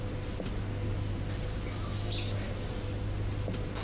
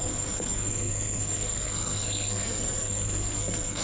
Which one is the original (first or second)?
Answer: first